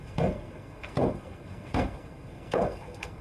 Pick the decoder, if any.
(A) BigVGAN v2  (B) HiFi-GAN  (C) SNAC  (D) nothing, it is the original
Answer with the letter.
C